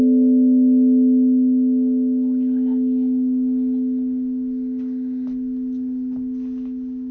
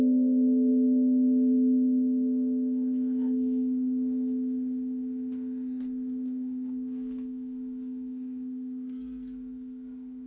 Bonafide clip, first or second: first